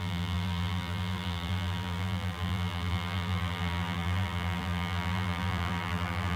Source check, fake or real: fake